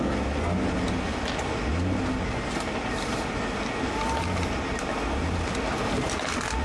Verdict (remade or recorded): recorded